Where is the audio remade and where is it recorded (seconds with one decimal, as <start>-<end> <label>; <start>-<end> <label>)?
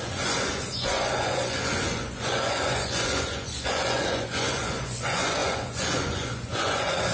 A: 0.0-7.1 remade